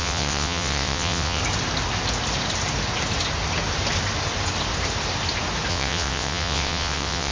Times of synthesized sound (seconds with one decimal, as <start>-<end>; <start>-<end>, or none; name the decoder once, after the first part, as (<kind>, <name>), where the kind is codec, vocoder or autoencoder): 0.0-1.4 (vocoder, WaveNeXt); 5.7-7.3